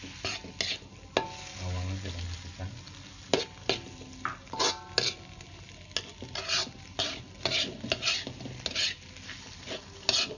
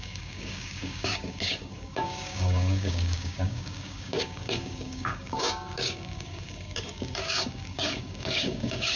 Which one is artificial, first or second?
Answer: second